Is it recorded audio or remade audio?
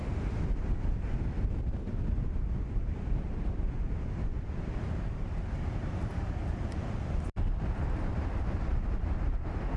remade